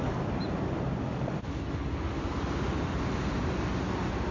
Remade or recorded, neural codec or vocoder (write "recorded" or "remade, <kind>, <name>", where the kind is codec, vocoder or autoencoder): recorded